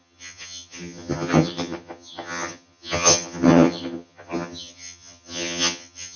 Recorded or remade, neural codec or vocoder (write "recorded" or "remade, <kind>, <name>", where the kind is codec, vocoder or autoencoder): remade, vocoder, HiFi-GAN